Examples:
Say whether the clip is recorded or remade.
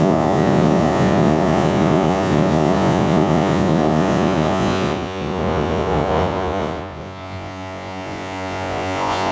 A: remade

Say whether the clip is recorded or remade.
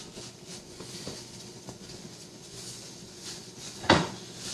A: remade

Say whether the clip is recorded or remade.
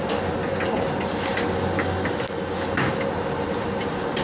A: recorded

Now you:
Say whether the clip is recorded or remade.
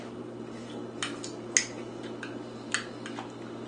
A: recorded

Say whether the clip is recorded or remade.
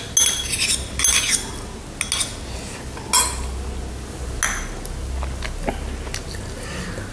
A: recorded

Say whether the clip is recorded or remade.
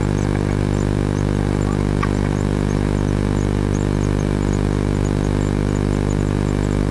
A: recorded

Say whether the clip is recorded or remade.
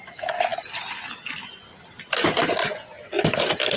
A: recorded